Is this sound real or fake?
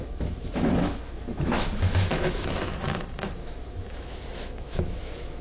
fake